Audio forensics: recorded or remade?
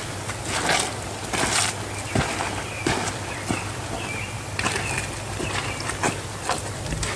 recorded